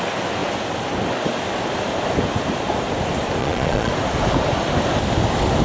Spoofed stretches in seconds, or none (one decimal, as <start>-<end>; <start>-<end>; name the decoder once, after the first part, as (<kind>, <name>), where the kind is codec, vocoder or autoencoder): 3.4-3.9 (vocoder, Vocos)